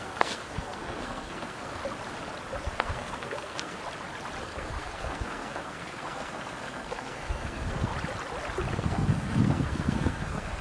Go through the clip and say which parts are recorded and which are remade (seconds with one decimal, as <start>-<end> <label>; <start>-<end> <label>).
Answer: 0.0-1.8 remade; 1.8-2.6 recorded; 2.6-3.8 remade; 3.8-4.4 recorded; 4.4-7.9 remade; 7.9-8.7 recorded; 8.7-10.6 remade